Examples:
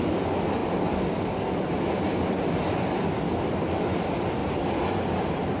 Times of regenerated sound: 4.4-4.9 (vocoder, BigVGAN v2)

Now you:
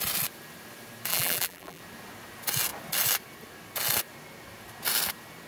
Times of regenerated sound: 1.1-1.8 (vocoder, BigVGAN v2)

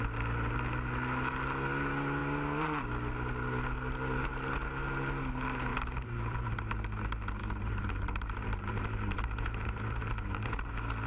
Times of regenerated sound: 5.7-6.6 (vocoder, BigVGAN v2); 7.4-10.7

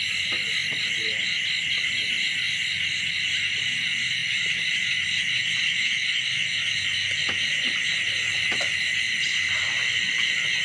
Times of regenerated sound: none

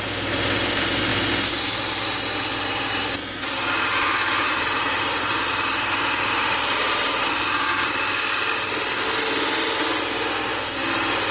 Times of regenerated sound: 1.1-2.2 (vocoder, BigVGAN v2); 3.2-7.2

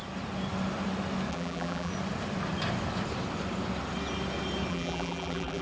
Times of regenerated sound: 1.3-1.9 (vocoder, BigVGAN v2); 4.7-5.6